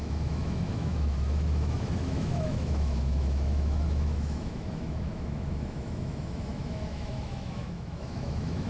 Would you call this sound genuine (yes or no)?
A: no